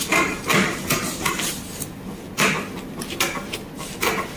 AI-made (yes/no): no